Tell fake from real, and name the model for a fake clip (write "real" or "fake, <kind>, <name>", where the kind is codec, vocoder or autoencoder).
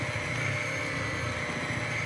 real